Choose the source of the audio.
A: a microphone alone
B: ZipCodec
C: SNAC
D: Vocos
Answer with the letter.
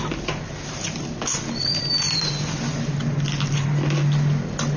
A